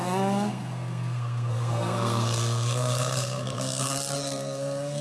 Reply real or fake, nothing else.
fake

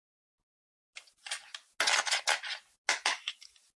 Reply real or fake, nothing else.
real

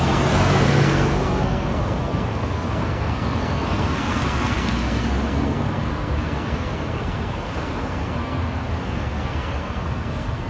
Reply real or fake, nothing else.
fake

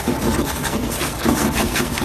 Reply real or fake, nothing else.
fake